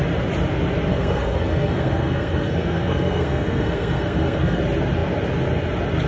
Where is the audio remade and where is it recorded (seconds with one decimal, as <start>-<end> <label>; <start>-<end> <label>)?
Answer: 0.0-0.9 recorded; 0.9-4.6 remade; 4.6-6.1 recorded